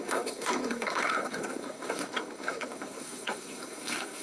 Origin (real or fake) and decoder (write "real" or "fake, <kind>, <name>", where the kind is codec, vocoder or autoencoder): fake, codec, SNAC